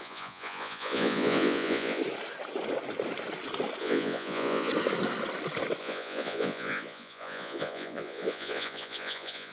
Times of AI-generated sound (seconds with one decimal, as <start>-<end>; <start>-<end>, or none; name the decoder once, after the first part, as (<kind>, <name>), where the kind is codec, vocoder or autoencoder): 0.0-2.0 (vocoder, Vocos); 3.8-4.7; 5.8-9.5